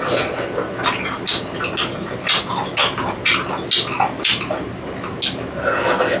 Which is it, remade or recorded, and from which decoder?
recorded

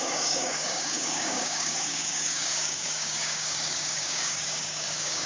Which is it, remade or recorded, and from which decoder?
remade, codec, DAC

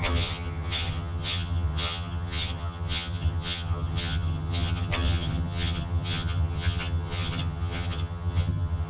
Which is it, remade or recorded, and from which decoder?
remade, vocoder, HiFi-GAN